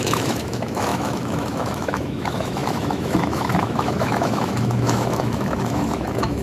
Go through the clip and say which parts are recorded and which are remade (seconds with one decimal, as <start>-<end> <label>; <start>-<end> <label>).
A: 0.0-6.4 remade